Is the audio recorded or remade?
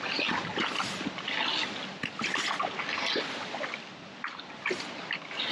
recorded